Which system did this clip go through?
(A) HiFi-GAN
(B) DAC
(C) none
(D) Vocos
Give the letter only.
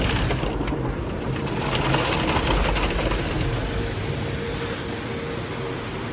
C